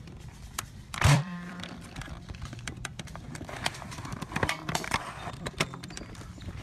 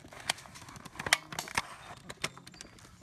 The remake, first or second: first